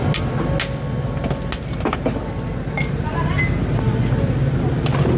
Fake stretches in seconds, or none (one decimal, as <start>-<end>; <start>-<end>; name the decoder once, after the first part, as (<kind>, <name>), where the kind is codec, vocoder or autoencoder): none